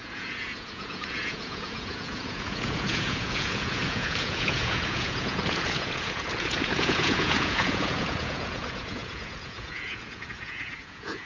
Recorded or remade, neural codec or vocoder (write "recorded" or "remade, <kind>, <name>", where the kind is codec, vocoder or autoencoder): remade, vocoder, Vocos